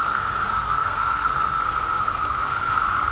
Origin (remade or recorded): remade